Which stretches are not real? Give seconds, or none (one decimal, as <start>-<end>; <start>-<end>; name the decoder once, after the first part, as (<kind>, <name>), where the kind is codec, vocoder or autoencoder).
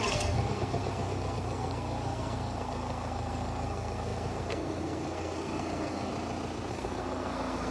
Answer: 0.0-6.1 (codec, SNAC); 6.7-7.7